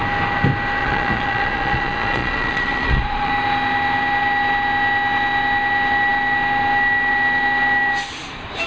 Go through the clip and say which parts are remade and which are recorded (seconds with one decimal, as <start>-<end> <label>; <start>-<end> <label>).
0.0-0.8 recorded; 0.8-3.3 remade; 3.3-8.7 recorded